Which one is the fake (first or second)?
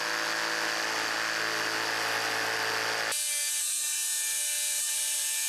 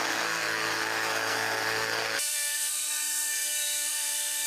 second